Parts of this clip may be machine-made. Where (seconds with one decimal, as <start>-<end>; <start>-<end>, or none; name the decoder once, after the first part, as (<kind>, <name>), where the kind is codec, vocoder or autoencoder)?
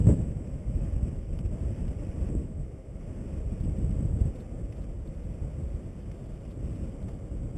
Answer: 0.0-0.9 (autoencoder, DAC-VAE); 2.4-3.0